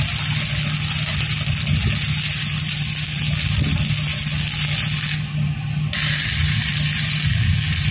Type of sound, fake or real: real